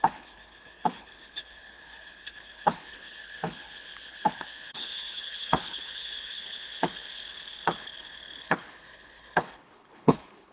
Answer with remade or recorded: remade